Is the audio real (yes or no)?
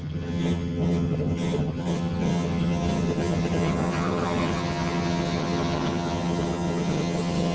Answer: no